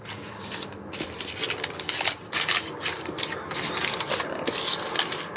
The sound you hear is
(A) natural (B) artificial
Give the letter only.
A